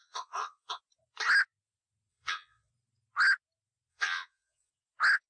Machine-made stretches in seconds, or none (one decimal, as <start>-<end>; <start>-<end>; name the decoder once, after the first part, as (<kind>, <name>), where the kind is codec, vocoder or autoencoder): 0.0-0.8 (vocoder, WaveNeXt); 2.1-2.7; 3.9-4.7